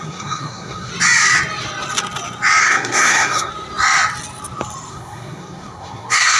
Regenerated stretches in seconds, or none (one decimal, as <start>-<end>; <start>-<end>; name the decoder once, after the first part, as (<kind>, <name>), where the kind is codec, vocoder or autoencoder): 0.0-0.9 (codec, SNAC); 2.6-3.5; 4.9-6.4